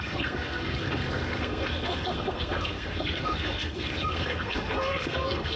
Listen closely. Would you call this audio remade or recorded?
remade